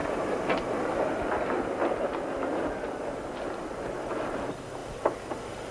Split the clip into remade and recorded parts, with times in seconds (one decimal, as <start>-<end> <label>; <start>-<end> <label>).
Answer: 0.0-5.7 recorded